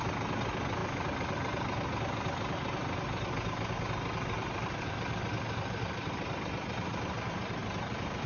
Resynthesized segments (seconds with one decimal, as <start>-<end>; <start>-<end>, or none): 4.4-4.9; 7.6-8.3